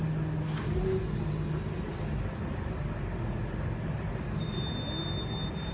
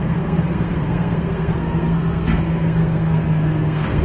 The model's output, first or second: second